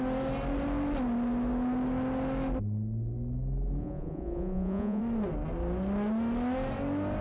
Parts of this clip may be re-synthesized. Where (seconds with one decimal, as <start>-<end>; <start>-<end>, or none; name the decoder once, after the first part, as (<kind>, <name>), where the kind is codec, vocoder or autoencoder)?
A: 3.8-5.0 (vocoder, Vocos)